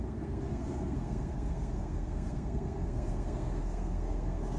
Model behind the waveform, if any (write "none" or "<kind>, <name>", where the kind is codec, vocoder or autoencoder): codec, SNAC